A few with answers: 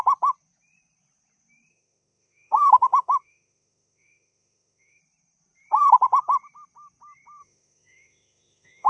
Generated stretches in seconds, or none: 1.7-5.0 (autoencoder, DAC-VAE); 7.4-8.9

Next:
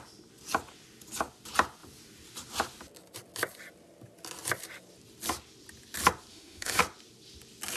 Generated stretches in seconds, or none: 6.3-6.8 (autoencoder, DAC-VAE)